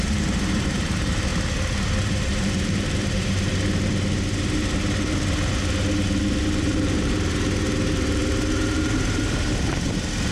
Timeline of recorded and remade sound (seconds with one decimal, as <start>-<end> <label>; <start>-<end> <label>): 0.0-1.3 remade; 1.3-2.0 recorded; 2.0-3.5 remade; 3.5-6.6 recorded; 6.6-10.3 remade